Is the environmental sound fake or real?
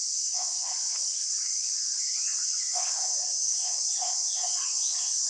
fake